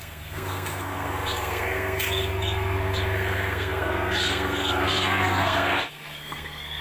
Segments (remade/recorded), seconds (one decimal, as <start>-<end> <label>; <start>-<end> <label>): 0.0-6.8 remade